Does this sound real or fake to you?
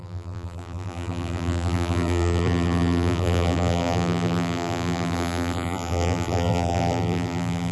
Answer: fake